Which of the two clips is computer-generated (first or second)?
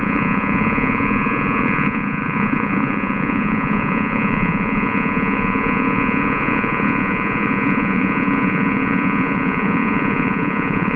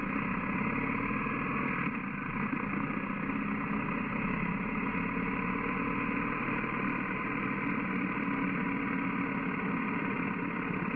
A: first